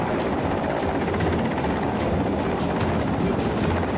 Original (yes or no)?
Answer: yes